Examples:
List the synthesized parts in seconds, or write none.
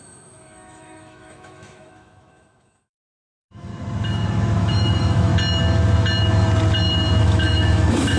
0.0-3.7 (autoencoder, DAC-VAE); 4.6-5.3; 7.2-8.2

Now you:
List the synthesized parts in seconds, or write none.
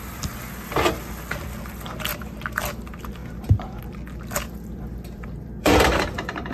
2.1-2.6 (vocoder, BigVGAN v2); 3.2-3.8; 5.6-6.5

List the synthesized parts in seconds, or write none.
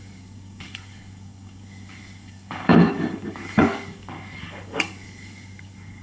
0.0-6.0 (codec, DAC)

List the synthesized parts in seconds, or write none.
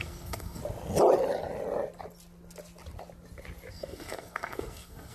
0.0-0.6 (codec, SNAC); 3.7-5.1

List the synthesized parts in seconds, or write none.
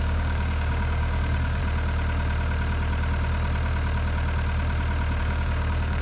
0.0-1.6 (codec, DAC); 5.2-6.0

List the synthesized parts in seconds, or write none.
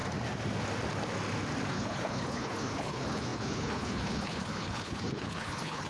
1.7-5.9 (codec, HILCodec)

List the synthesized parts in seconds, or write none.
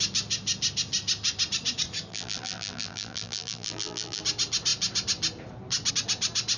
2.1-4.2 (vocoder, BigVGAN v2)